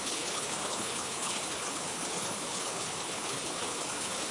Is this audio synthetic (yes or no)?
yes